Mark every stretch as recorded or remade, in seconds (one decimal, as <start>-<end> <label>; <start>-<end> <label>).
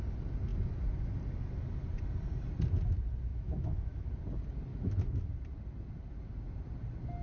0.0-3.3 recorded; 3.3-4.1 remade; 4.1-4.7 recorded; 4.7-5.3 remade; 5.3-7.2 recorded